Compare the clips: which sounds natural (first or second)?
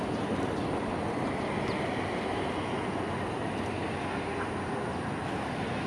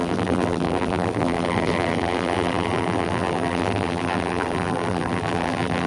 first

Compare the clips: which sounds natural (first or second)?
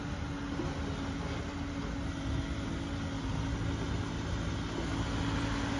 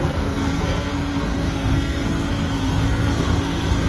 first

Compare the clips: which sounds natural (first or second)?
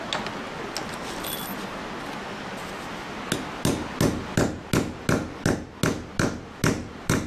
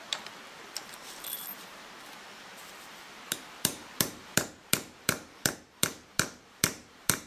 first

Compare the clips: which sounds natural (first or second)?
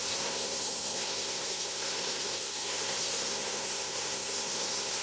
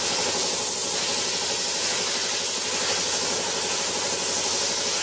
second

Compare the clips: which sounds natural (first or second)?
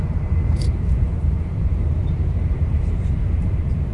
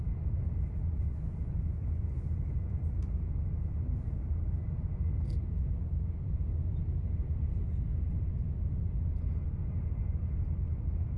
second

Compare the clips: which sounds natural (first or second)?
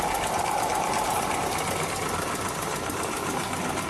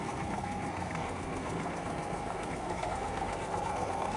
first